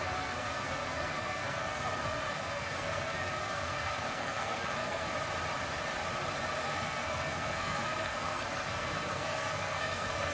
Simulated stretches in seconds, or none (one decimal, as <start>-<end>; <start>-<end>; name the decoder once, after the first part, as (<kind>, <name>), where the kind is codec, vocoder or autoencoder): 0.0-5.1 (codec, SNAC); 6.6-10.3